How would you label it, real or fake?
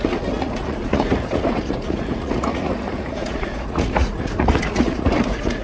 fake